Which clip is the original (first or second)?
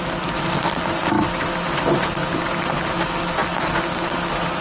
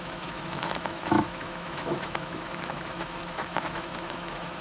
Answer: first